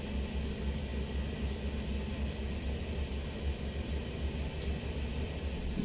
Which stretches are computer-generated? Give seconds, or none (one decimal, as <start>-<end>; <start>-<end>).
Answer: none

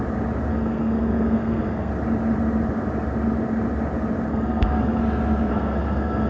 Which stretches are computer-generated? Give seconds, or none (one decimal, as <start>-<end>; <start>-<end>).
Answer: 0.5-1.9; 4.3-5.0; 5.5-6.3

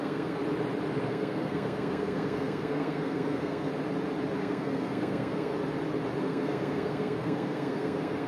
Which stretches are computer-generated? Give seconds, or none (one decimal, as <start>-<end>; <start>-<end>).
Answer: 0.0-0.4; 1.0-3.7; 4.4-5.5; 6.2-8.3